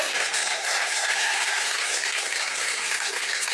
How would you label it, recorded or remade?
remade